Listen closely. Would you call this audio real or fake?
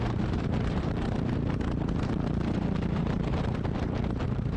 fake